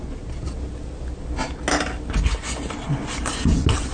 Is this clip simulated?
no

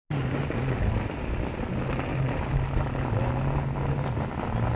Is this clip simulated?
no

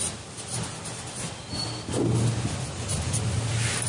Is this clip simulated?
no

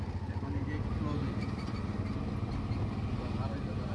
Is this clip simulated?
no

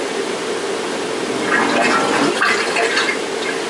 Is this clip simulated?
no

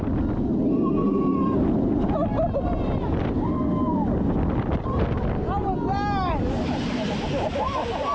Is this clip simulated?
no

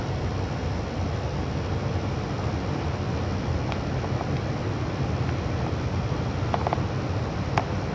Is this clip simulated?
no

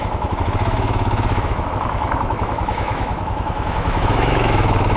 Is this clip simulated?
yes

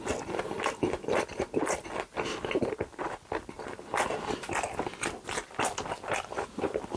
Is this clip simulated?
no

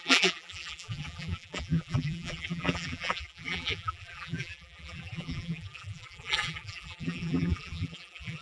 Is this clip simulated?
yes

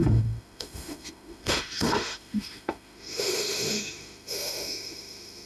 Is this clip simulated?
yes